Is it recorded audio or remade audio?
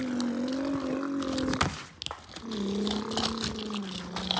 recorded